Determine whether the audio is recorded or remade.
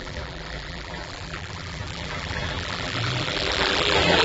remade